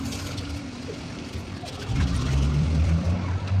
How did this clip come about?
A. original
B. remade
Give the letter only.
B